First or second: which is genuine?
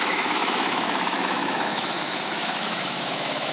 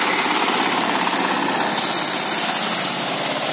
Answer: second